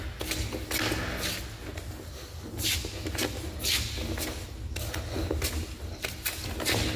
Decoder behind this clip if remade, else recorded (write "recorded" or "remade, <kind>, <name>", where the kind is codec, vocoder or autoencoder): recorded